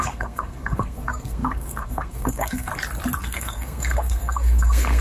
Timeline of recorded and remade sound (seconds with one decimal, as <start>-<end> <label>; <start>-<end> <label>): 0.0-2.7 remade; 2.7-3.2 recorded; 3.2-5.0 remade